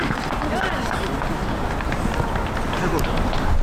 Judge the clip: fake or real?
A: real